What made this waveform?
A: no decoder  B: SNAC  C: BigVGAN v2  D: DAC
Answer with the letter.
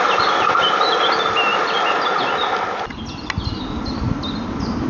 A